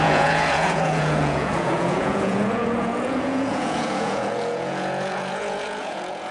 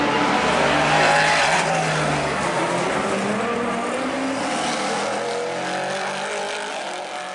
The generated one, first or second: first